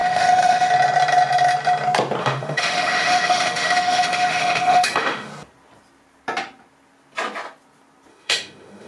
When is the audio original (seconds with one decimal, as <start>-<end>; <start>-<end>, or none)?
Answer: 0.7-2.2; 5.3-8.1

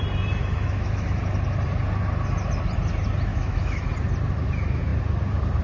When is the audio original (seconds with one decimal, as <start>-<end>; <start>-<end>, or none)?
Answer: 0.0-0.4; 1.2-3.3; 3.9-5.6

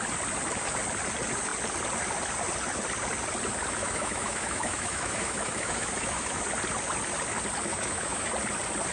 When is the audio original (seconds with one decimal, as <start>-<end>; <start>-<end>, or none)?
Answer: 0.0-3.8; 6.4-7.7; 8.3-8.9

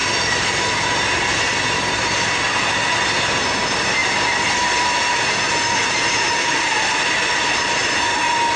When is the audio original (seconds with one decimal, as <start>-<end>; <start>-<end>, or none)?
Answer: 0.0-8.6

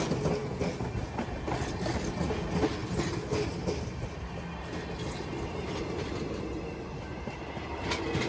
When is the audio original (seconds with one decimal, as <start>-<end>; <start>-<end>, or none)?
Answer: 0.0-8.3